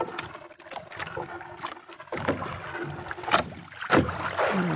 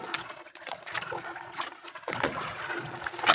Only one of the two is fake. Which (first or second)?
second